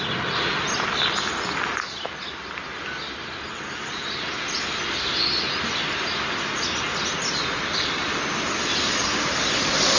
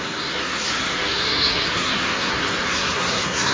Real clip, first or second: first